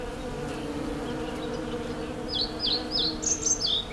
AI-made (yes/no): no